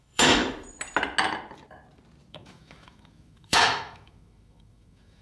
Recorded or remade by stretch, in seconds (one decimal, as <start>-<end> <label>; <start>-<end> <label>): 0.0-0.4 remade; 0.4-2.3 recorded; 2.3-5.2 remade